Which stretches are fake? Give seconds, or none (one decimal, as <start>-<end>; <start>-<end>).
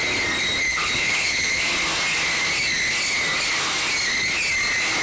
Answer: 0.7-1.6